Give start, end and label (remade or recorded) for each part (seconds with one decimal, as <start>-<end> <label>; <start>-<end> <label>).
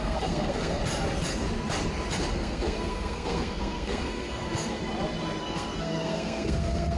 0.0-0.8 remade; 0.8-2.3 recorded; 2.3-4.8 remade; 4.8-5.4 recorded; 5.4-7.0 remade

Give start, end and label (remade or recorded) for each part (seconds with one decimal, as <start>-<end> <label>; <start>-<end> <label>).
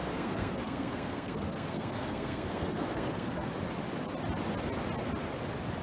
0.0-3.5 remade; 3.5-5.8 recorded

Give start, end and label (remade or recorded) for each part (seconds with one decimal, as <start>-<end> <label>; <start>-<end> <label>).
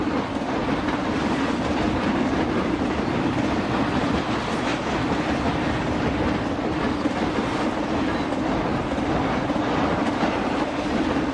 0.0-3.6 remade; 3.6-4.7 recorded; 4.7-5.4 remade; 5.4-8.7 recorded; 8.7-10.0 remade; 10.0-11.3 recorded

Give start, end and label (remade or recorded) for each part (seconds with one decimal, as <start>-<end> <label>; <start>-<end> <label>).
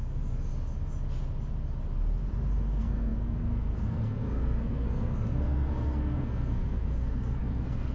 0.0-0.5 remade; 0.5-2.7 recorded; 2.7-7.9 remade